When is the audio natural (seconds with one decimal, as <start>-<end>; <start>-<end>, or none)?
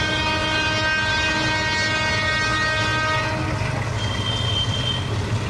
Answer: 0.0-5.5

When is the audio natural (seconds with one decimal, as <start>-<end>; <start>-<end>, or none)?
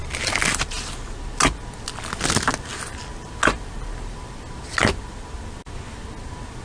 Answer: 0.0-6.6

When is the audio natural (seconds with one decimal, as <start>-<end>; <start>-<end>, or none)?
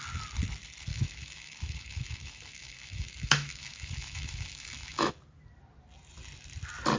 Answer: 0.0-0.9; 5.1-7.0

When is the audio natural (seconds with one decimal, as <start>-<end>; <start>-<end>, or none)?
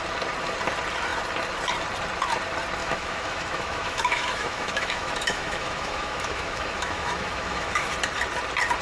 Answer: 0.0-2.8; 7.9-8.8